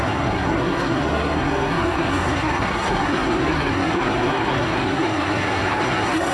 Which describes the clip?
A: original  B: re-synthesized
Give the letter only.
B